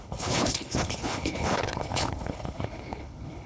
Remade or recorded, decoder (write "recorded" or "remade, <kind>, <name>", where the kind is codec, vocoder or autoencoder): remade, codec, HILCodec